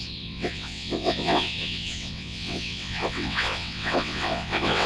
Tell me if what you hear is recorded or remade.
remade